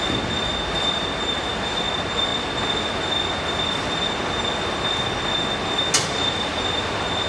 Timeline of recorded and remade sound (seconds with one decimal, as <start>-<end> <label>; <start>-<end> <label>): 0.0-7.3 recorded